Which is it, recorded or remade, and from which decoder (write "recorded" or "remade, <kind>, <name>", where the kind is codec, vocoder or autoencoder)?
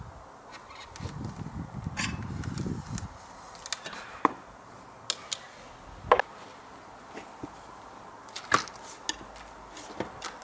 recorded